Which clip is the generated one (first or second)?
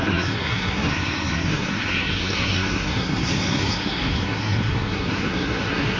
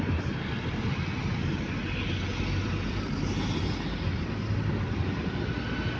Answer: first